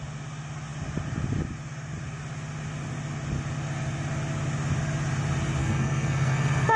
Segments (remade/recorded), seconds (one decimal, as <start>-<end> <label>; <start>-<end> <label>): 0.0-5.6 recorded; 5.6-6.8 remade